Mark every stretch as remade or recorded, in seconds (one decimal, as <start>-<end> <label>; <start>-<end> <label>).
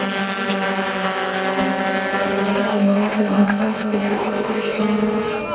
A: 0.0-2.7 recorded; 2.7-4.8 remade; 4.8-5.5 recorded